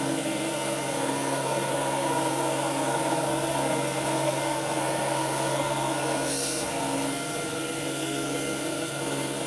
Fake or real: fake